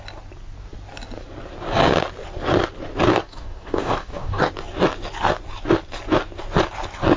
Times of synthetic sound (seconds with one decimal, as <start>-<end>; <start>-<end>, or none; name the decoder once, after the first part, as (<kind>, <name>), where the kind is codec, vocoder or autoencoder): 3.1-4.5 (codec, DAC)